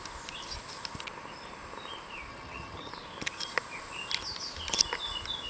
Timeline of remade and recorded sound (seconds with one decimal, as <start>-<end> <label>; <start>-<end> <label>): 0.0-2.3 recorded; 2.3-2.9 remade; 2.9-5.5 recorded